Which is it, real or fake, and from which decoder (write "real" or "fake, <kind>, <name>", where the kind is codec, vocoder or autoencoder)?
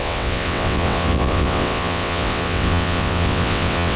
fake, vocoder, WaveNeXt